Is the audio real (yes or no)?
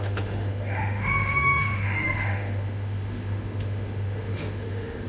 no